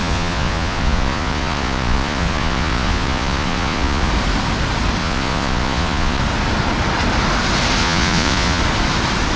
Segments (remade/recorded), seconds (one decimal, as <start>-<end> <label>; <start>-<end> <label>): 0.0-4.1 remade; 4.1-5.0 recorded; 5.0-6.2 remade; 6.2-7.8 recorded; 7.8-8.6 remade; 8.6-9.4 recorded